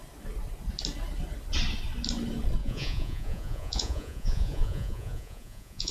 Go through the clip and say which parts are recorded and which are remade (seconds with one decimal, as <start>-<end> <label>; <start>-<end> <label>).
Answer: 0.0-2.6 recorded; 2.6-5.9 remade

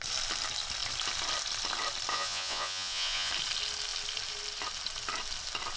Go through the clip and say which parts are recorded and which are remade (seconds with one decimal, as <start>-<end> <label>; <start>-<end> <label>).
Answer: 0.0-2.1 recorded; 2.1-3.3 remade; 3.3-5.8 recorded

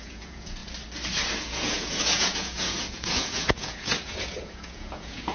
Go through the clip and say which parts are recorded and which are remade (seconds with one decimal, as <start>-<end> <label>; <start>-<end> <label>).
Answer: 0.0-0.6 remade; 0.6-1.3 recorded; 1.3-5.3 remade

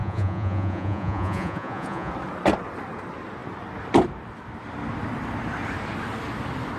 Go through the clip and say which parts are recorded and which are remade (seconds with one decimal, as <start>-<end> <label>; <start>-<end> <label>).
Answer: 0.0-2.1 remade; 2.1-6.8 recorded

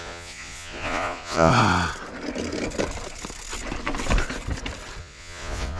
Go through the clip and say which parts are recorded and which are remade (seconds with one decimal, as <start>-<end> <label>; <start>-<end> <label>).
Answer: 0.0-1.5 remade; 1.5-5.0 recorded; 5.0-5.8 remade

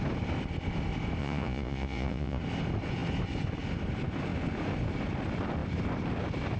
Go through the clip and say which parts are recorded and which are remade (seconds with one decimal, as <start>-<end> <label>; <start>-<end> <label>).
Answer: 0.0-1.2 recorded; 1.2-2.4 remade; 2.4-6.6 recorded

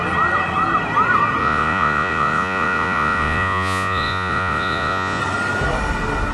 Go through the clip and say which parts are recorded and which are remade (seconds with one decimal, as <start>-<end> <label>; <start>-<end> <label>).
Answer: 0.0-1.4 recorded; 1.4-5.2 remade; 5.2-6.3 recorded